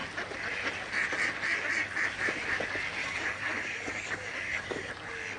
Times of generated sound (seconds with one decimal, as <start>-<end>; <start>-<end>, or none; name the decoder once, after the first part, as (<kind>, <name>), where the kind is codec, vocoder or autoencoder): 3.0-4.9 (codec, DAC)